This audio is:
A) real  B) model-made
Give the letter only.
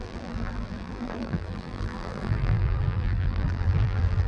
B